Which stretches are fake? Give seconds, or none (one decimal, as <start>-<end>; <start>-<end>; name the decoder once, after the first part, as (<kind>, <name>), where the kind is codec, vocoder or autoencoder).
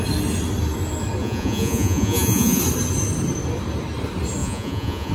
1.2-2.6 (vocoder, Vocos); 4.4-5.1